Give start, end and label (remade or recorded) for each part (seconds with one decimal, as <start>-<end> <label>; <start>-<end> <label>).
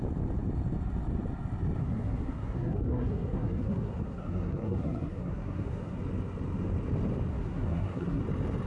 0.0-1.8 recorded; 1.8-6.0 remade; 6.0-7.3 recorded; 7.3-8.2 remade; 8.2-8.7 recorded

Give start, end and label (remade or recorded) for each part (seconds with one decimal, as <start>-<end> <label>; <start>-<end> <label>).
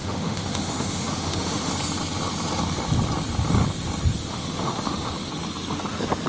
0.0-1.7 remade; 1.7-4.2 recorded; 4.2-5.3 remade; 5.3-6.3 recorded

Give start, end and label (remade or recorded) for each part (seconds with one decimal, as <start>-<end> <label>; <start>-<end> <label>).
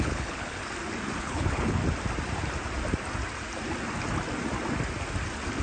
0.0-0.6 remade; 0.6-1.2 recorded; 1.2-1.8 remade; 1.8-5.6 recorded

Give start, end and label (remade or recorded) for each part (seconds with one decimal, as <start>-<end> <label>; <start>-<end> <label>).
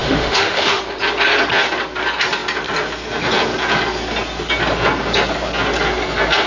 0.0-0.8 remade; 0.8-6.5 recorded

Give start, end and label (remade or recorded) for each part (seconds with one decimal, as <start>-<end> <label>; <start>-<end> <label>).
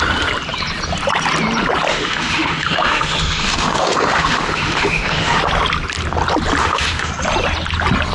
0.0-1.9 recorded; 1.9-5.4 remade; 5.4-6.6 recorded; 6.6-7.1 remade; 7.1-8.1 recorded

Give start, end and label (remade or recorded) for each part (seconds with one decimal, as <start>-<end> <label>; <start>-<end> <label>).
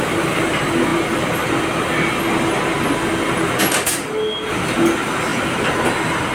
0.0-6.3 recorded